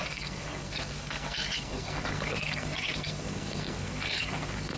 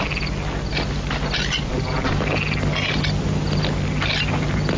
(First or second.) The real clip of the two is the second